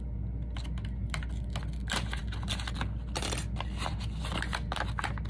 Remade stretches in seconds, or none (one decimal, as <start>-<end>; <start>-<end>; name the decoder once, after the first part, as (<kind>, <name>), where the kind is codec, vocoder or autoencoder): none